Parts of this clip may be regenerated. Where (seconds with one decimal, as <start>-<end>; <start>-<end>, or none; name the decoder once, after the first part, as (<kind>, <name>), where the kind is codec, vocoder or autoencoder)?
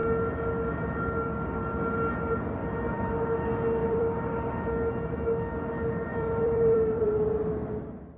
3.8-4.6 (vocoder, BigVGAN v2); 6.1-7.5